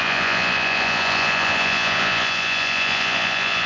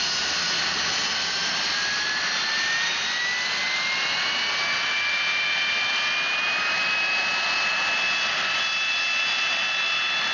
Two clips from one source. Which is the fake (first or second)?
first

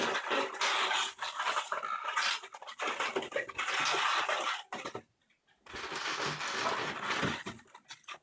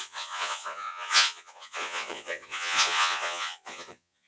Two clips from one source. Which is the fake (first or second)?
second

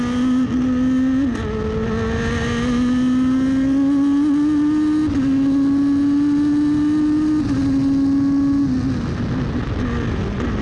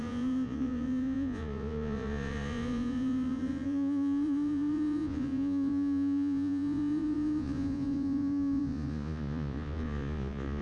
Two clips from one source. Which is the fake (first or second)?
second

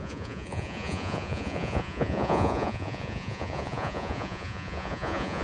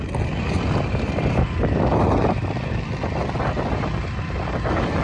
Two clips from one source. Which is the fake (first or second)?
first